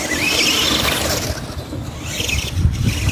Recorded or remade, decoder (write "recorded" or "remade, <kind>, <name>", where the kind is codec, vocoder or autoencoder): recorded